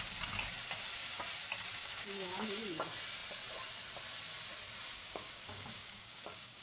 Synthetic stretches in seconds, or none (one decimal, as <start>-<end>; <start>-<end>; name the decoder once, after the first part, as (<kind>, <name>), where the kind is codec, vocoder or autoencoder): 1.8-2.5 (codec, DAC); 5.0-6.6